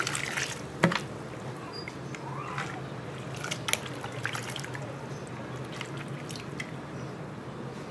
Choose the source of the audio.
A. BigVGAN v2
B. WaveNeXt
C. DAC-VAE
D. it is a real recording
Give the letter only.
D